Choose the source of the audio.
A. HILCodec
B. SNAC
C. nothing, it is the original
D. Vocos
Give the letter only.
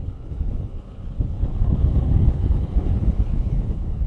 A